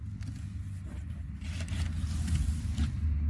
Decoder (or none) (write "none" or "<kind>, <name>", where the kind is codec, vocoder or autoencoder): none